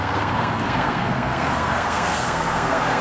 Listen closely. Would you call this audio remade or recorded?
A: remade